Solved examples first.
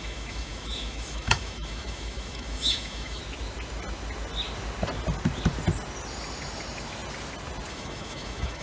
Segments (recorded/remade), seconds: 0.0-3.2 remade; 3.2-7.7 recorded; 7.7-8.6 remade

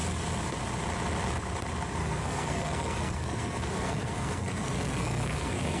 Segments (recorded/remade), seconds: 0.0-2.0 recorded; 2.0-5.8 remade

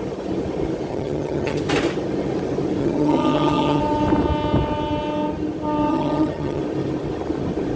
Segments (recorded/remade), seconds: 0.0-0.9 recorded; 0.9-1.6 remade; 1.6-2.8 recorded; 2.8-3.8 remade; 3.8-5.9 recorded; 5.9-6.6 remade; 6.6-7.8 recorded

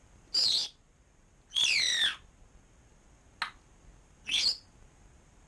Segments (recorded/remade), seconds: 0.0-5.5 recorded

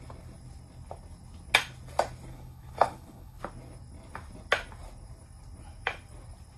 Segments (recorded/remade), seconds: 0.0-2.3 recorded; 2.3-3.4 remade; 3.4-6.6 recorded

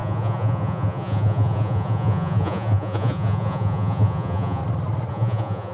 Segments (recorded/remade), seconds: 0.0-4.6 remade; 4.6-5.1 recorded; 5.1-5.7 remade